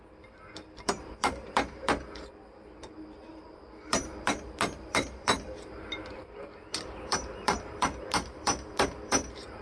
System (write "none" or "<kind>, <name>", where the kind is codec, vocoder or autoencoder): vocoder, BigVGAN v2